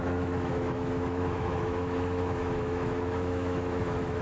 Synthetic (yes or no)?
yes